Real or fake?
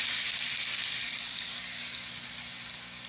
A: real